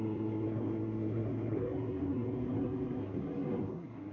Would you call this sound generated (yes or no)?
yes